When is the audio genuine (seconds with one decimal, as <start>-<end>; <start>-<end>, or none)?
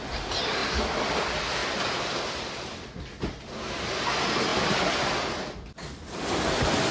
0.0-0.6; 1.2-1.6; 2.9-6.9